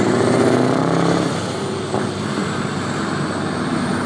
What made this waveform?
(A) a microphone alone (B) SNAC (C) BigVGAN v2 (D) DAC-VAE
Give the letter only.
A